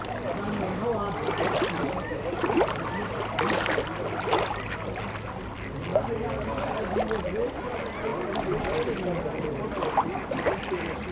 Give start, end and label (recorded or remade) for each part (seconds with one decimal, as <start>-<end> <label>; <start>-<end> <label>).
0.0-11.1 recorded